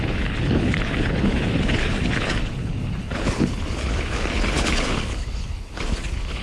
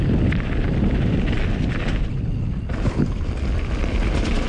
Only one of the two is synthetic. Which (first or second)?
first